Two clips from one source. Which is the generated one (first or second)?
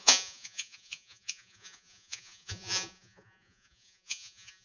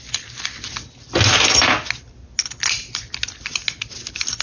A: first